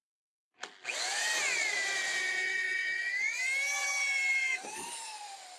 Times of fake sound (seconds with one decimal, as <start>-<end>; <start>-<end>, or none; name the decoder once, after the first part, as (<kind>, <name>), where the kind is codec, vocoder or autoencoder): 1.7-3.5 (vocoder, BigVGAN v2); 4.3-5.6

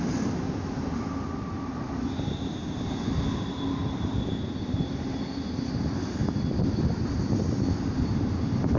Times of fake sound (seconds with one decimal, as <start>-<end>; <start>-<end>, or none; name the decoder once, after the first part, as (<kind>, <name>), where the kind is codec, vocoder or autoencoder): 3.8-5.2 (vocoder, BigVGAN v2); 6.2-8.1

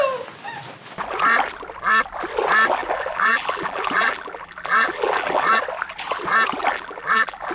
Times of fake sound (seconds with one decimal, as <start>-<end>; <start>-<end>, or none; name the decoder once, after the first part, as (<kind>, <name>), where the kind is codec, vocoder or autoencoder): 2.8-5.6 (vocoder, BigVGAN v2); 6.6-7.5

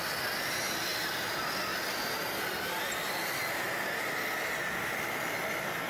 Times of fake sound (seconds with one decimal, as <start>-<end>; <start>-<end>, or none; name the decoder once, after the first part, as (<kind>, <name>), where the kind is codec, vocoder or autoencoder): none

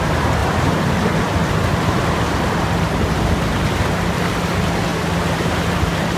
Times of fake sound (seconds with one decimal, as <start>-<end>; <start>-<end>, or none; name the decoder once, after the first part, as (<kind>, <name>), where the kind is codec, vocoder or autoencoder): 0.4-0.9 (vocoder, BigVGAN v2); 1.4-4.0; 4.9-6.2